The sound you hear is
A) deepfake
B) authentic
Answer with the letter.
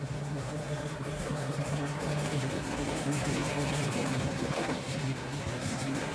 A